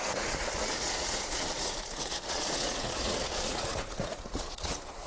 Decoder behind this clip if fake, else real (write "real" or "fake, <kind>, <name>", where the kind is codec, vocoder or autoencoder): fake, vocoder, Vocos